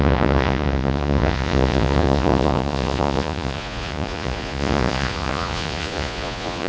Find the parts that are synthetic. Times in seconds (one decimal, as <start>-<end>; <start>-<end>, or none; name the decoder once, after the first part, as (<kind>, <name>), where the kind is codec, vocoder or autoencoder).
0.0-6.7 (vocoder, Vocos)

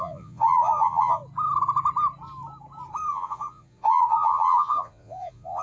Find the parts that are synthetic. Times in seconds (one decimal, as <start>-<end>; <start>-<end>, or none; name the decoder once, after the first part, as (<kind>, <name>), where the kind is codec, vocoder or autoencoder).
0.0-1.2 (vocoder, Vocos); 3.1-5.6

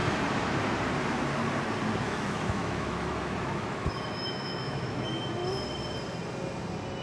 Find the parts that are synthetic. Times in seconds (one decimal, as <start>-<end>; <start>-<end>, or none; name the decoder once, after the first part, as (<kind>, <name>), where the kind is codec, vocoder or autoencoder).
2.0-5.4 (autoencoder, DAC-VAE)

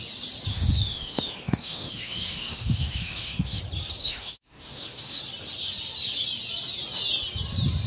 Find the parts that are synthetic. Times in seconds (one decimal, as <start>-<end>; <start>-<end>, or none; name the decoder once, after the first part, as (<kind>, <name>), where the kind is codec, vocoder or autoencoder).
0.5-3.6 (autoencoder, DAC-VAE); 4.0-5.2

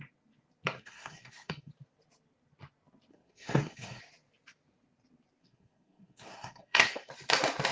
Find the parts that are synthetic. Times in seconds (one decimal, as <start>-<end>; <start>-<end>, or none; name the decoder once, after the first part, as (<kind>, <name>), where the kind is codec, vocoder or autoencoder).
0.8-1.7 (codec, SNAC); 3.1-4.0; 5.4-7.1

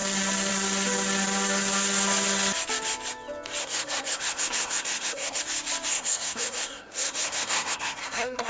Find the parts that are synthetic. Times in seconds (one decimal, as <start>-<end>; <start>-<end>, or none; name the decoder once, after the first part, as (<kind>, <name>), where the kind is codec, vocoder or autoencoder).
3.6-5.4 (codec, SNAC); 5.9-8.5